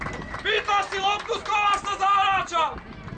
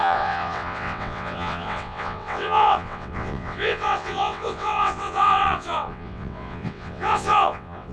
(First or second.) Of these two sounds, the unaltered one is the first